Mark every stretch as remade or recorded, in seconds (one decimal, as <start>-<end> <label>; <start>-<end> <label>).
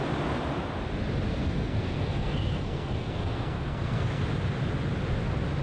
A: 0.0-1.3 recorded; 1.3-4.2 remade; 4.2-5.6 recorded